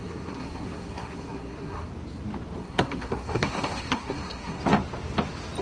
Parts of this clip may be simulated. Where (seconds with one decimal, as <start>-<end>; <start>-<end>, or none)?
0.0-1.9; 2.6-4.6